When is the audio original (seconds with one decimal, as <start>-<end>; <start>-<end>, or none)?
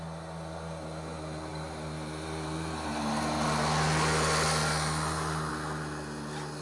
0.0-6.6